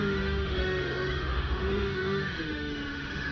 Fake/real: fake